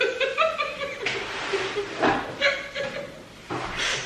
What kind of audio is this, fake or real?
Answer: real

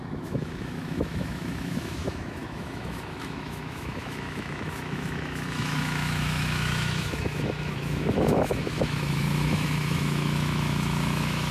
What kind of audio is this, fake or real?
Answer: fake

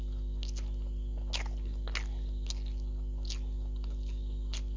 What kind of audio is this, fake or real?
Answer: real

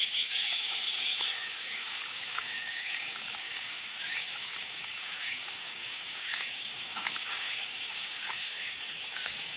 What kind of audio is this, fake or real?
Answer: fake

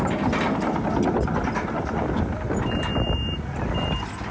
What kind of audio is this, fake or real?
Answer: real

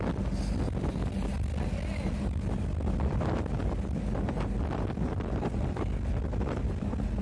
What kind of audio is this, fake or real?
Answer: real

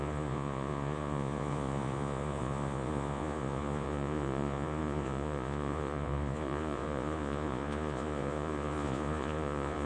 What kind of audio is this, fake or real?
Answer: fake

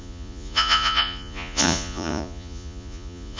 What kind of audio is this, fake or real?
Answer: fake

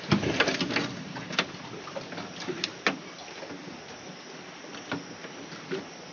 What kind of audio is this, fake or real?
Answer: real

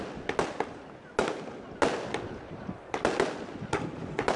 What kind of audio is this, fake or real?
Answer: real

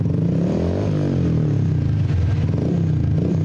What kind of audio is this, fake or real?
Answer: real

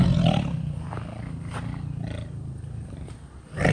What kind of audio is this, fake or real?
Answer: real